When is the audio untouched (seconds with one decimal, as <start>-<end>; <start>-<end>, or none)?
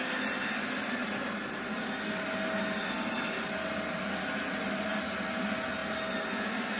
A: 0.0-6.8